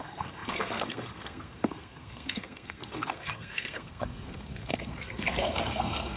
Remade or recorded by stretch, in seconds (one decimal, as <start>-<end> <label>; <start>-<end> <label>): 0.0-6.2 remade